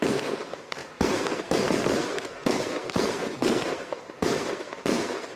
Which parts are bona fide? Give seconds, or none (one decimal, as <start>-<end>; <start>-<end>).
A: none